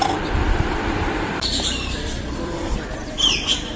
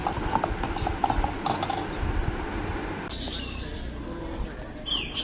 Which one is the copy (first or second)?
first